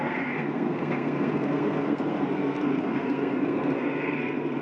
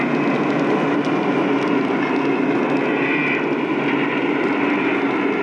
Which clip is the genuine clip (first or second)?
second